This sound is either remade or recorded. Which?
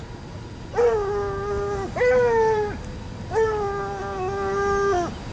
recorded